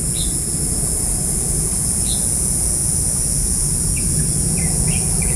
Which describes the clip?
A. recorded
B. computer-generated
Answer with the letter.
A